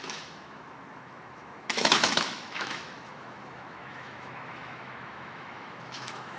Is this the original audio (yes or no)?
no